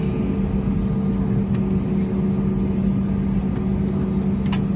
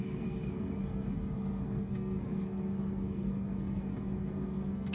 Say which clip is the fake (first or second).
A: second